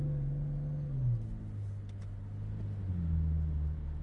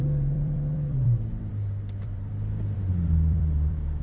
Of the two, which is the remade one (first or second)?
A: second